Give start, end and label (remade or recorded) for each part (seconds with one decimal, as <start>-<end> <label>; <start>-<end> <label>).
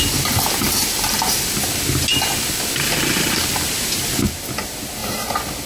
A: 0.0-5.7 recorded